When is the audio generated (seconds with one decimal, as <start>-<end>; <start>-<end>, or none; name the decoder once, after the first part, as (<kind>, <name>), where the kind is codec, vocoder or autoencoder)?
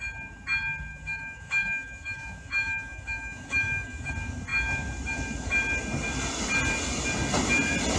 0.9-4.1 (autoencoder, DAC-VAE)